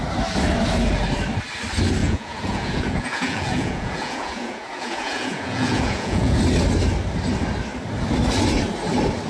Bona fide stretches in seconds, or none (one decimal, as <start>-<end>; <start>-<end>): 0.0-2.0; 6.4-9.3